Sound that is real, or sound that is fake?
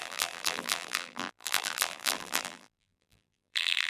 fake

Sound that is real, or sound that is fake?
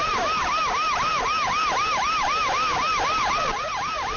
fake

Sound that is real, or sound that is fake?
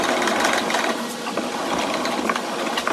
real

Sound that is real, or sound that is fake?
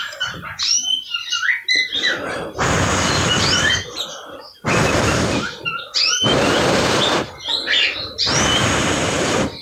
fake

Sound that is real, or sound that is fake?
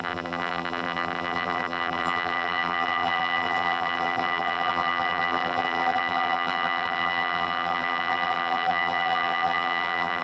fake